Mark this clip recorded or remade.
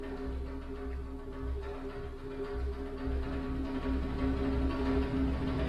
recorded